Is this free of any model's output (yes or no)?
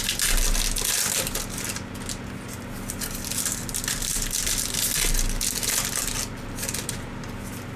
yes